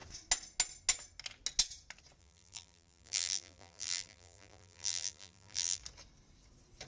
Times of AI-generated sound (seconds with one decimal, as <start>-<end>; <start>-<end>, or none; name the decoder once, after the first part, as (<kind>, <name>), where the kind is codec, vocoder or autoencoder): 2.2-5.8 (vocoder, BigVGAN v2)

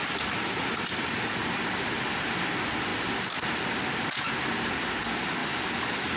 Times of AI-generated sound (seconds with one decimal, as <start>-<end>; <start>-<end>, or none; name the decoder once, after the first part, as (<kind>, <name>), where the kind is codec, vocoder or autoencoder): 5.4-6.2 (vocoder, BigVGAN v2)